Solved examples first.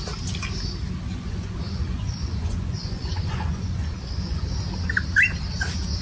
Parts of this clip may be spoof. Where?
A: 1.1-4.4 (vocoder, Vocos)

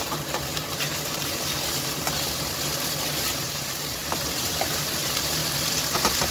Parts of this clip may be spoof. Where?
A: 0.0-5.4 (vocoder, BigVGAN v2)

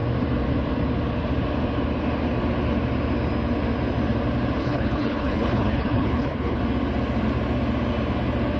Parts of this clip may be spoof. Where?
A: 4.6-6.6 (codec, HILCodec)

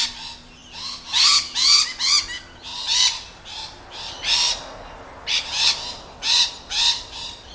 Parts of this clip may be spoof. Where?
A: none

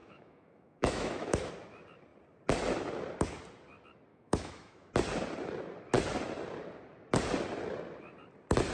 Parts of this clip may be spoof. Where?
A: 0.0-1.5 (autoencoder, DAC-VAE); 4.1-4.9

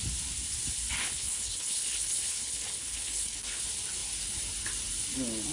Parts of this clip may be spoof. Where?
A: 1.0-3.6 (codec, HILCodec)

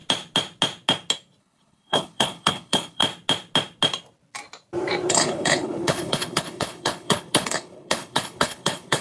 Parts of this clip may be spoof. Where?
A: 1.4-3.0 (codec, HILCodec); 5.1-9.0